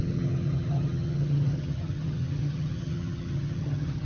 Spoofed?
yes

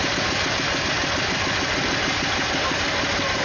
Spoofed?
no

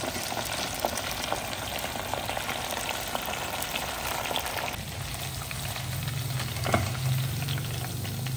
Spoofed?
no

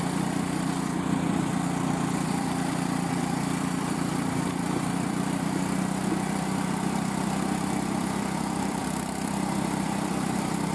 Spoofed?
yes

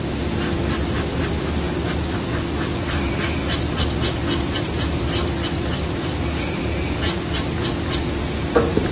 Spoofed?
no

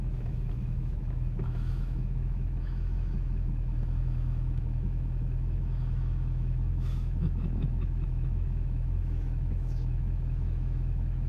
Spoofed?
yes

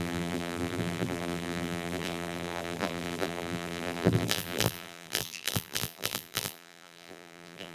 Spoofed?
yes